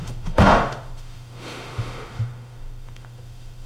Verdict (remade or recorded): remade